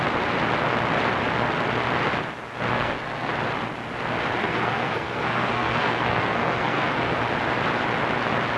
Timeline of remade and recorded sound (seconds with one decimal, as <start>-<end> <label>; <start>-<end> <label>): 0.0-2.7 recorded; 2.7-3.3 remade; 3.3-4.4 recorded; 4.4-7.2 remade; 7.2-8.6 recorded